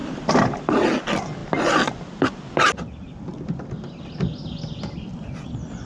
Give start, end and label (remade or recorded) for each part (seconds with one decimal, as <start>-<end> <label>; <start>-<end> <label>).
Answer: 0.0-0.6 remade; 0.6-5.9 recorded